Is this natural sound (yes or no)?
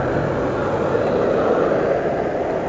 yes